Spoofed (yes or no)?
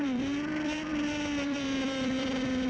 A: yes